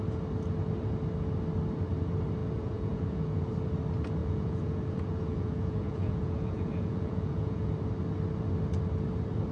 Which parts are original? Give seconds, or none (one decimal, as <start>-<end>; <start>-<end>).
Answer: 0.0-2.4; 3.4-4.2; 7.7-9.5